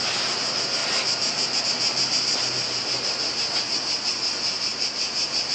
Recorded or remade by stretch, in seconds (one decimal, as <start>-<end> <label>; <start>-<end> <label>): 0.0-5.5 recorded